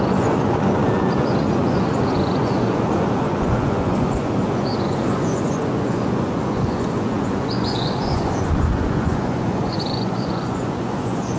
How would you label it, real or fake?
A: fake